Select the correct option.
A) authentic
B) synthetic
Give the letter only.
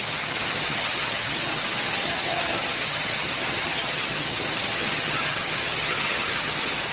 B